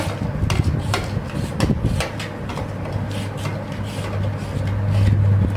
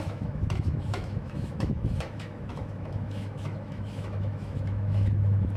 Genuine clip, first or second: first